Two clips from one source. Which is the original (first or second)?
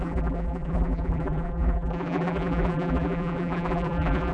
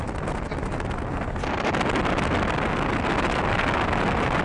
second